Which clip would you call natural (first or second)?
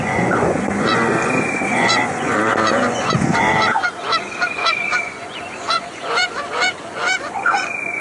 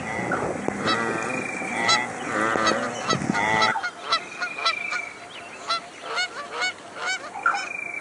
second